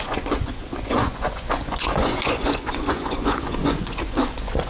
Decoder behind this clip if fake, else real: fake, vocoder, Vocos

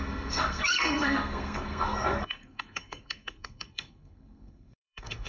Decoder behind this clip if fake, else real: fake, codec, SNAC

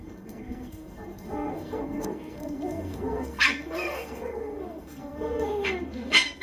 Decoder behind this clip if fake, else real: fake, codec, SNAC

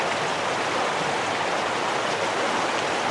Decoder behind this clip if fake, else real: real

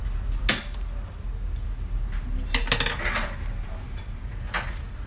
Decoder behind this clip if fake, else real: real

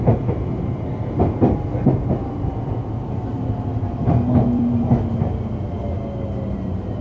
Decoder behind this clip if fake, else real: fake, vocoder, BigVGAN v2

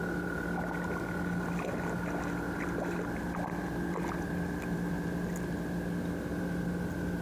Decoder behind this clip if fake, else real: real